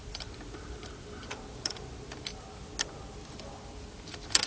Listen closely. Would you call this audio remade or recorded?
recorded